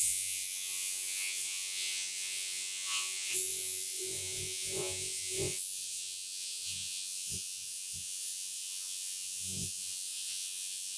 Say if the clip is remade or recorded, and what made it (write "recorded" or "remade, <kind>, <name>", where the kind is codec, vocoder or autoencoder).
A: remade, vocoder, Vocos